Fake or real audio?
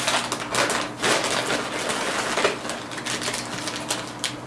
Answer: real